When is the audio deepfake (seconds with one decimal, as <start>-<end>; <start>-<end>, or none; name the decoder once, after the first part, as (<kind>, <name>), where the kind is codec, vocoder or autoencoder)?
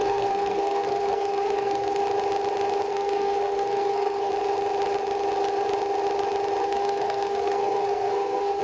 0.0-2.0 (codec, SNAC); 2.9-4.3; 6.6-8.6